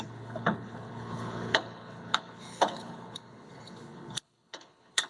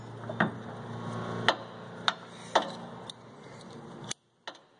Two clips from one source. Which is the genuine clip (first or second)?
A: second